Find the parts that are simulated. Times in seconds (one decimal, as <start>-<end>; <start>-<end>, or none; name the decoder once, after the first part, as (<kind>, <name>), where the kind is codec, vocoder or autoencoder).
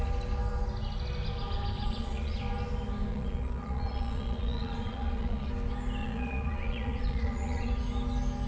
1.8-2.4 (vocoder, Vocos); 3.1-5.5; 6.0-7.7